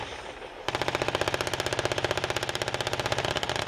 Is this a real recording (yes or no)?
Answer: yes